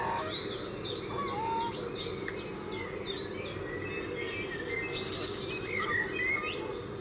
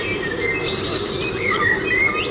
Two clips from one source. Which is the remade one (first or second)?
second